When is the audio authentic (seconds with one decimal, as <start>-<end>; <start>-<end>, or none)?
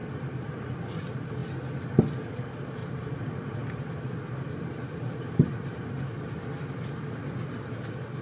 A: 0.7-2.8; 7.3-8.2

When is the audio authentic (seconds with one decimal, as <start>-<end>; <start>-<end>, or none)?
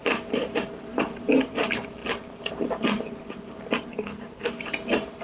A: 0.0-3.9; 4.5-5.2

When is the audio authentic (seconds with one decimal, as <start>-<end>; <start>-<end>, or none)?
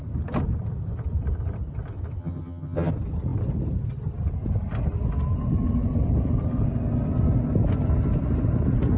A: 0.0-2.2; 2.9-9.0